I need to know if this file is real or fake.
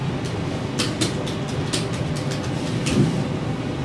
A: real